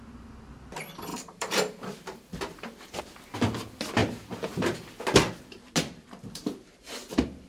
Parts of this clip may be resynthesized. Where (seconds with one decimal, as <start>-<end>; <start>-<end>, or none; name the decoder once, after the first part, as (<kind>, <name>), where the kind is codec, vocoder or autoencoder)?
1.1-3.0 (vocoder, BigVGAN v2); 4.0-4.8; 6.4-7.1